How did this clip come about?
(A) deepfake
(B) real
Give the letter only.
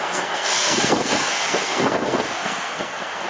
A